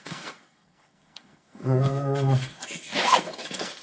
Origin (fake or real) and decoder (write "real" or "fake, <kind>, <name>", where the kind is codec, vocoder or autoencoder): fake, codec, SNAC